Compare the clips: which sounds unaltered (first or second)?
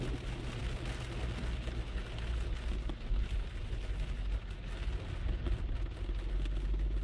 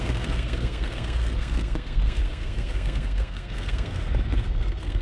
first